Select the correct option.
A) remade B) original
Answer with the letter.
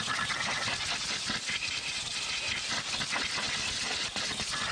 B